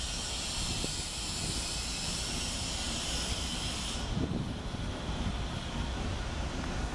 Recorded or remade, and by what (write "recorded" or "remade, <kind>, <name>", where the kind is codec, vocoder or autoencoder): recorded